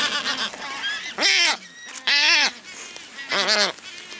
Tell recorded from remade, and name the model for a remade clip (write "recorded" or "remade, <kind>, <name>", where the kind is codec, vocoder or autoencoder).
recorded